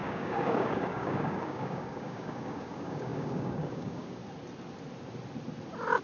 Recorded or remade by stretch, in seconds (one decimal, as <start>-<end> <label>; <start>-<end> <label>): 0.0-4.2 remade; 4.2-6.0 recorded